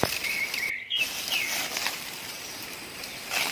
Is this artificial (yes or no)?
yes